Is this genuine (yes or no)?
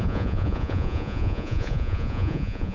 no